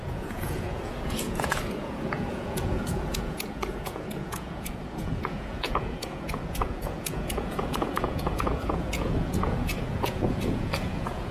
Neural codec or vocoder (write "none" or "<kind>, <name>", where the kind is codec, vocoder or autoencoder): vocoder, Vocos